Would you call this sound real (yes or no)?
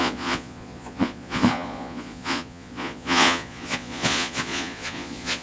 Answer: no